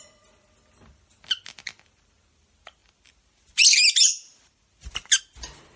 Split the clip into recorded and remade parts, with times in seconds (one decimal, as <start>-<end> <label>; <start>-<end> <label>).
0.0-5.8 recorded